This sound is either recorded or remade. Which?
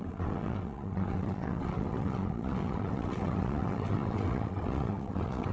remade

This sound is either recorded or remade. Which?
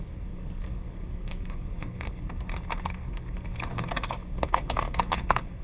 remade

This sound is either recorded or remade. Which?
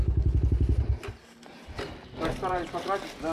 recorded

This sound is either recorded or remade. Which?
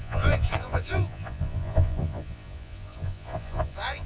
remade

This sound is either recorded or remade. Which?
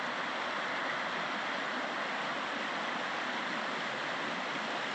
recorded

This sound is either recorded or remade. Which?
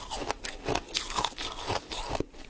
recorded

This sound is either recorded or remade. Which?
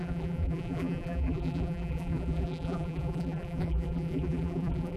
remade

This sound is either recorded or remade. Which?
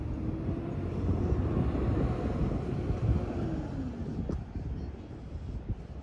recorded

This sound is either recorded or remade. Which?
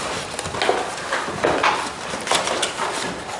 recorded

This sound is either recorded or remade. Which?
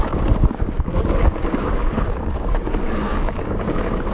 remade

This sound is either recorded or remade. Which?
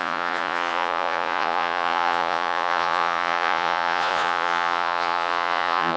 remade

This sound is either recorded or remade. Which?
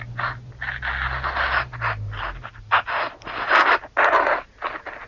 recorded